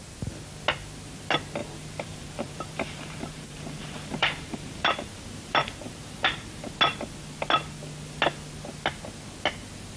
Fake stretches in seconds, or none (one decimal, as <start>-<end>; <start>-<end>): 1.6-6.7